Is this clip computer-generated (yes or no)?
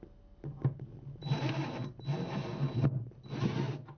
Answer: no